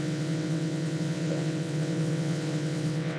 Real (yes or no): no